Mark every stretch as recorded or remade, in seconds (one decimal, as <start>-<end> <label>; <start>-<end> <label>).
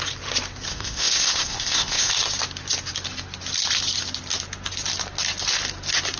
0.0-0.7 recorded; 0.7-2.1 remade; 2.1-6.2 recorded